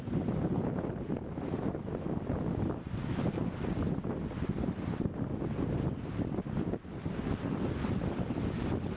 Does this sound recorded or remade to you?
recorded